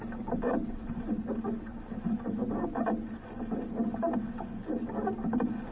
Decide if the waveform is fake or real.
real